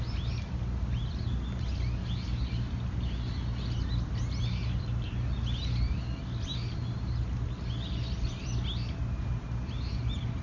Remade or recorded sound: recorded